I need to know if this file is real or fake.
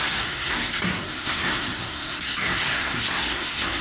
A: fake